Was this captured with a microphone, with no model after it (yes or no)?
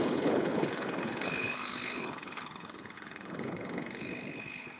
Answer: no